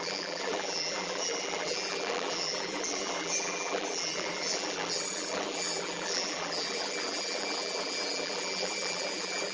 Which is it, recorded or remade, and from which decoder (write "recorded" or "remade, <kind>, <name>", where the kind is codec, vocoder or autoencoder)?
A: remade, vocoder, BigVGAN v2